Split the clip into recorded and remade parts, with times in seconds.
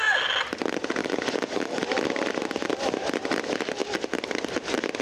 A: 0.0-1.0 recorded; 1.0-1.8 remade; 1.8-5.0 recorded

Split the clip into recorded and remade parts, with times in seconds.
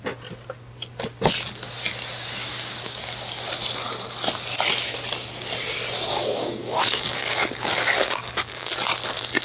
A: 0.0-2.5 recorded; 2.5-3.0 remade; 3.0-6.1 recorded; 6.1-8.7 remade; 8.7-9.4 recorded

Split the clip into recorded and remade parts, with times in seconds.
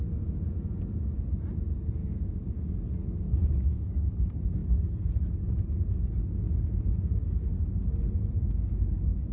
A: 0.0-2.0 recorded; 2.0-2.7 remade; 2.7-9.3 recorded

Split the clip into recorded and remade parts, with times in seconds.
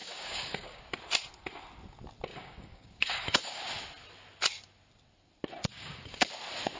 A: 0.0-0.8 remade; 0.8-2.3 recorded; 2.3-3.6 remade; 3.6-5.7 recorded; 5.7-6.3 remade; 6.3-6.8 recorded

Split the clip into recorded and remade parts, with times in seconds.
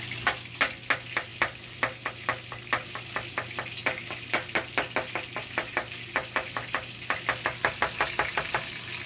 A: 0.0-9.1 recorded